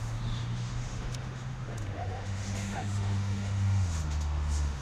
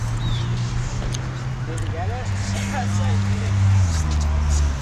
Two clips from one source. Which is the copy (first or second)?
first